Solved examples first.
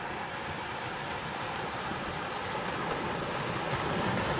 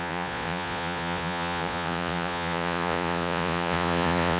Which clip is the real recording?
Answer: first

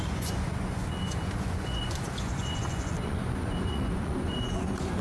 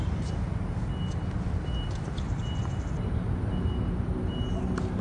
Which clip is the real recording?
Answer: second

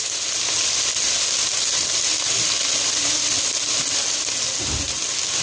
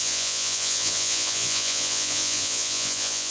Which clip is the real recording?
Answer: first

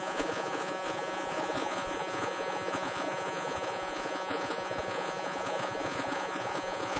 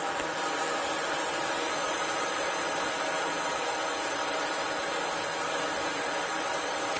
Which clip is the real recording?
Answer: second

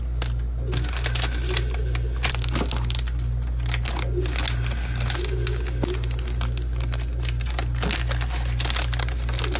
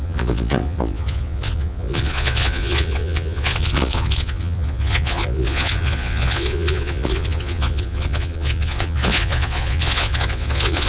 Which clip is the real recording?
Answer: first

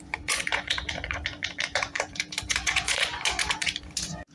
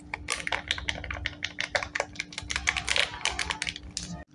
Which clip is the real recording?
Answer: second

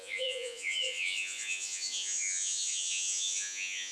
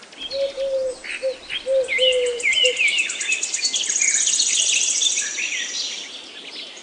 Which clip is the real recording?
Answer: second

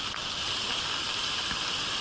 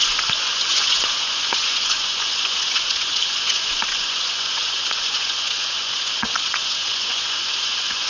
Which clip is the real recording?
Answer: first